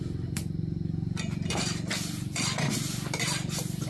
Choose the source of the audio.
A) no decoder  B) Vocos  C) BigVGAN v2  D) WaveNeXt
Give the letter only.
A